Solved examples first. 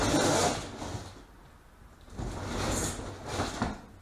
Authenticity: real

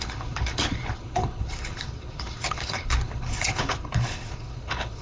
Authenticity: fake